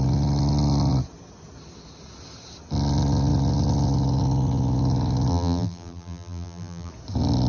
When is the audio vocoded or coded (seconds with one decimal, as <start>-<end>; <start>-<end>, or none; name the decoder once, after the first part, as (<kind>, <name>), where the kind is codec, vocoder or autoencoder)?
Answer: 5.3-6.9 (vocoder, BigVGAN v2)